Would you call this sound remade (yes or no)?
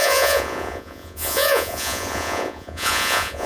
yes